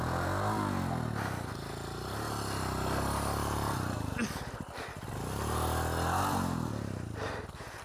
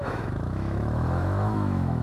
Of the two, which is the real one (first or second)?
first